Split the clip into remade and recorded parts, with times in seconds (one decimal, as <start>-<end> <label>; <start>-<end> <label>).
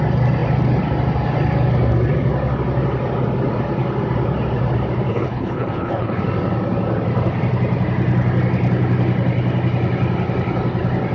0.0-5.1 recorded; 5.1-6.2 remade; 6.2-11.1 recorded